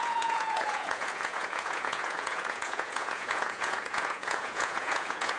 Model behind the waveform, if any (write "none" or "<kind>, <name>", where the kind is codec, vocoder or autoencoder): vocoder, Vocos